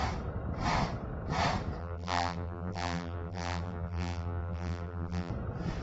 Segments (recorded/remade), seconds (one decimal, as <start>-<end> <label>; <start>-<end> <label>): 0.0-1.8 recorded; 1.8-5.3 remade; 5.3-5.8 recorded